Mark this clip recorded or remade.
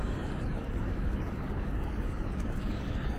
remade